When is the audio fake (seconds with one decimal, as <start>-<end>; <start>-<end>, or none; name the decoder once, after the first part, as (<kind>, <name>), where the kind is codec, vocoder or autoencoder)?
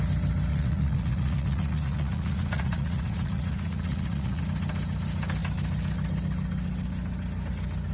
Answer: 0.5-4.4 (vocoder, Vocos)